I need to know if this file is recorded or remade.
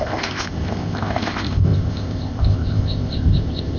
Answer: remade